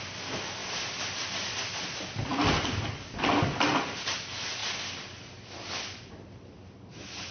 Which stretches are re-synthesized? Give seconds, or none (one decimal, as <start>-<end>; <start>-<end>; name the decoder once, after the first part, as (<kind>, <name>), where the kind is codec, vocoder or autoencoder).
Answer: none

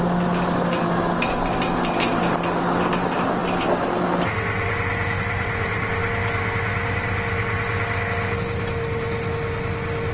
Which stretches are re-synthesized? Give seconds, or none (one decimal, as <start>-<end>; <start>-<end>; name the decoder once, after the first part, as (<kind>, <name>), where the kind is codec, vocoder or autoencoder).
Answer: none

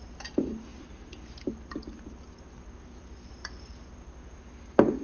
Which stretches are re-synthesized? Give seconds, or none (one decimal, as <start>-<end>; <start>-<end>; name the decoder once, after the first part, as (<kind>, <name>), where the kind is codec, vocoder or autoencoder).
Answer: none

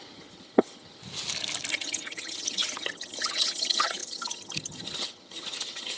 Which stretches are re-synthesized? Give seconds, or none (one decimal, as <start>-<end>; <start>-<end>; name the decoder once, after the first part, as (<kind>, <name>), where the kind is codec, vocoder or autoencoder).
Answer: 0.0-1.0 (vocoder, HiFi-GAN); 1.7-6.0

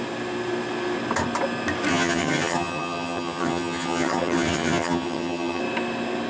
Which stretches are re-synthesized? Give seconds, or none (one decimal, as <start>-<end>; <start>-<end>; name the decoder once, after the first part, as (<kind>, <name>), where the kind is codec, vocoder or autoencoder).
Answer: 1.9-5.6 (vocoder, HiFi-GAN)

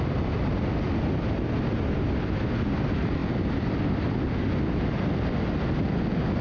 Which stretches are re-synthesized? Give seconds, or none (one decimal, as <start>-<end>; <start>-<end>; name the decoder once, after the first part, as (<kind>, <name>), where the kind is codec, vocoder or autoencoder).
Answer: none

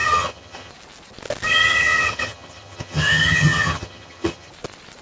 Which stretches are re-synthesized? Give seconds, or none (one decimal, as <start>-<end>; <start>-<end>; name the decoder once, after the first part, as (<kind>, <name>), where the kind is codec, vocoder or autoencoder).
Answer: 0.0-0.7 (vocoder, HiFi-GAN); 1.5-4.5

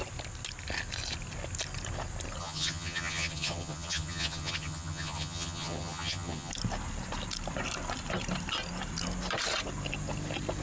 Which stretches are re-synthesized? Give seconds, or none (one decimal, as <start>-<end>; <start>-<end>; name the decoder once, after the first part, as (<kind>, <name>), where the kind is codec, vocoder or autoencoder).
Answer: 2.4-6.5 (vocoder, HiFi-GAN)